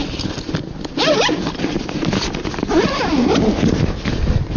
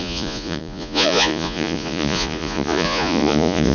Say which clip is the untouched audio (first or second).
first